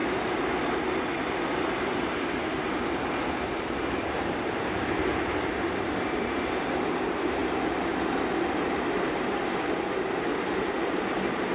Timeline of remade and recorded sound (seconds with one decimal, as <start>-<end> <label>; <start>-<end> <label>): 0.0-7.4 remade; 7.4-9.1 recorded; 9.1-11.5 remade